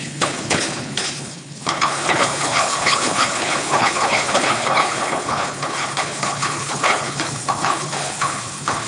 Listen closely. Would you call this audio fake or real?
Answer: fake